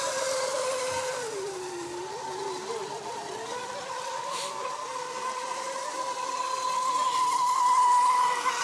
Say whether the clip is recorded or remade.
recorded